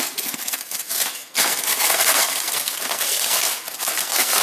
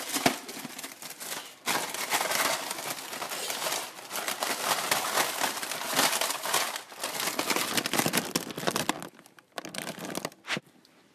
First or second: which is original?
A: second